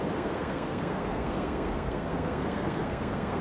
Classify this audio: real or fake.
fake